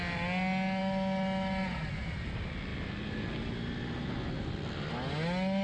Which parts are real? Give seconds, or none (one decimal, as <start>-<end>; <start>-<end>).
0.0-5.6